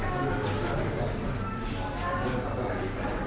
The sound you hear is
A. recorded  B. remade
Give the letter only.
A